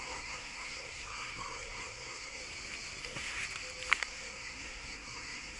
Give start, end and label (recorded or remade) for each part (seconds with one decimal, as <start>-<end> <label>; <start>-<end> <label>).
0.0-2.4 remade; 2.4-3.0 recorded; 3.0-3.4 remade; 3.4-4.0 recorded; 4.0-5.6 remade